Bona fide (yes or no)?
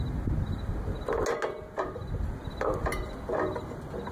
yes